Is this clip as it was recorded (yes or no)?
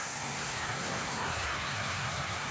no